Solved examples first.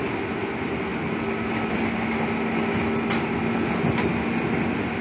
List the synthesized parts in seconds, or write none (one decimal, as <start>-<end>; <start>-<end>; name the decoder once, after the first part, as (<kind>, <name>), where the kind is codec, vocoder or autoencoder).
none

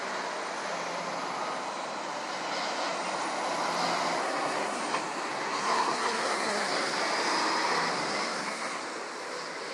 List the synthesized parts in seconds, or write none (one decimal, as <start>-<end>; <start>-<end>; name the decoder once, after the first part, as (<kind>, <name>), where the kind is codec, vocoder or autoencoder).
4.2-4.8 (codec, SNAC); 5.3-7.0; 7.9-8.8

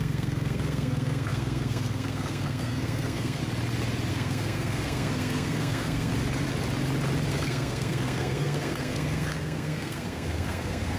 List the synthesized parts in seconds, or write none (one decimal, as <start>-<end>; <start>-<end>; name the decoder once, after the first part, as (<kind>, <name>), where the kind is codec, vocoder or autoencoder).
0.0-3.4 (codec, SNAC); 4.1-6.1; 7.3-11.0